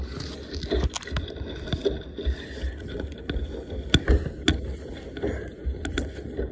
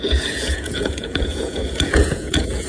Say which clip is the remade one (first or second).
second